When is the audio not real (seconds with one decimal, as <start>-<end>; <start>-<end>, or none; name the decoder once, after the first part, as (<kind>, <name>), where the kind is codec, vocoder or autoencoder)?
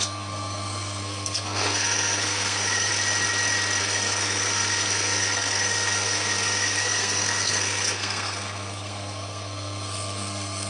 0.0-2.9 (codec, SNAC); 3.8-10.7